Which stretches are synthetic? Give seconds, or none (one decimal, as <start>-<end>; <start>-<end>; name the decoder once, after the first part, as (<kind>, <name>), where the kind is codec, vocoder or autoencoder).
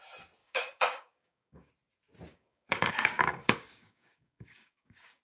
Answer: 0.4-1.7 (codec, DAC); 2.3-5.2